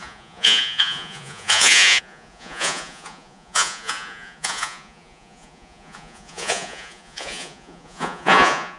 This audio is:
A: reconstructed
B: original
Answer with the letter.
A